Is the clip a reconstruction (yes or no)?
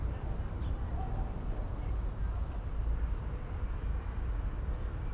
no